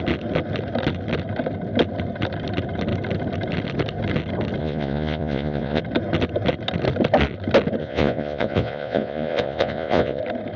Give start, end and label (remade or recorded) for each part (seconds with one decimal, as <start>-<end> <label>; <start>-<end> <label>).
0.0-4.6 recorded; 4.6-5.8 remade; 5.8-7.8 recorded; 7.8-10.2 remade; 10.2-10.6 recorded